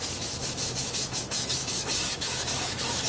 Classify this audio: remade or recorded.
remade